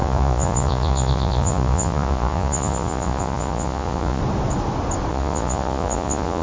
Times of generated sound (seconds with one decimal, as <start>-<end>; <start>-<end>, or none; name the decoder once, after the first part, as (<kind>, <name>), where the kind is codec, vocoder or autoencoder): 0.0-4.2 (vocoder, Vocos); 5.1-6.4